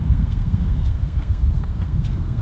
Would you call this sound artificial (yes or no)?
yes